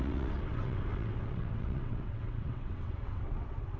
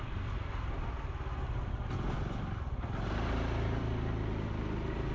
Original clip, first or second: second